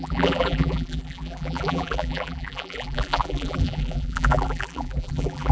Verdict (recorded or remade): remade